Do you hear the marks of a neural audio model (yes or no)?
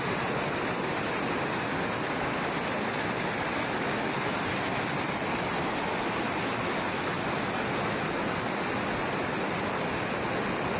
no